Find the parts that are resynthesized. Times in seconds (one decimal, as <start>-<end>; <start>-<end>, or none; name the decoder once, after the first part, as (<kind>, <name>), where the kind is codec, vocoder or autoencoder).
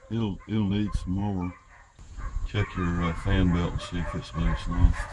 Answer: 0.0-0.7 (vocoder, Vocos); 1.2-4.3